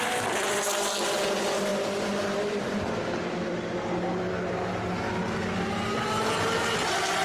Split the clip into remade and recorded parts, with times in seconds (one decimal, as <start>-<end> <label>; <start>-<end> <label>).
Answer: 0.0-7.2 recorded